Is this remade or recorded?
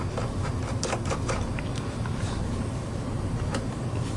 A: recorded